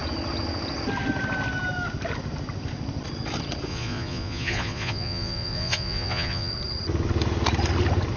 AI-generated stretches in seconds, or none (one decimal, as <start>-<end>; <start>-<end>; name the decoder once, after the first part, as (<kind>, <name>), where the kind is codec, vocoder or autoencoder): 3.7-6.5 (vocoder, Vocos)